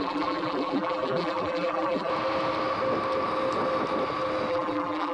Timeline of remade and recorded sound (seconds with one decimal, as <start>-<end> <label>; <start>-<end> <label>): 0.0-2.1 remade; 2.1-4.5 recorded; 4.5-5.1 remade